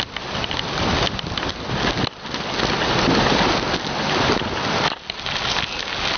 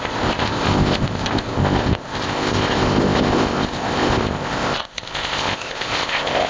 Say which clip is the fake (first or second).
second